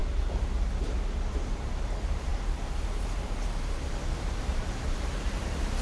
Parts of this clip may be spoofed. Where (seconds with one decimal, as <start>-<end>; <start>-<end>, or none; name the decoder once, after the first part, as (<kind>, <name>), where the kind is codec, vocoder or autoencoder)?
1.3-5.8 (vocoder, BigVGAN v2)